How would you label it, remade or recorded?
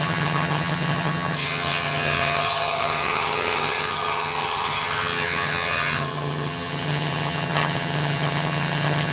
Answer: remade